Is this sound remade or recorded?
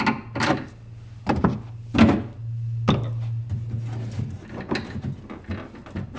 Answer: recorded